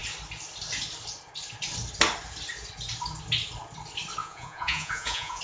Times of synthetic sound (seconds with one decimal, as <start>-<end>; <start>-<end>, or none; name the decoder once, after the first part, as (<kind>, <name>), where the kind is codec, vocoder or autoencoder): 4.2-5.4 (vocoder, Vocos)